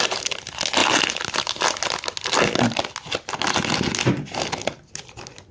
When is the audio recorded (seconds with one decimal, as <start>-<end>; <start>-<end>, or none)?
0.0-5.5